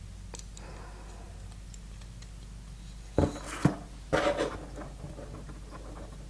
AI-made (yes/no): no